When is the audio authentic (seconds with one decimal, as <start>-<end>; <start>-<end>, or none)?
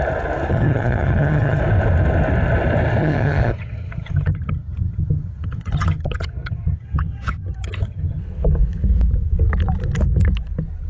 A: 0.0-0.5; 1.6-3.0; 8.2-10.9